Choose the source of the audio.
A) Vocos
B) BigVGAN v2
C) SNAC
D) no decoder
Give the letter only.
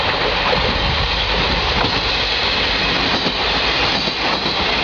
D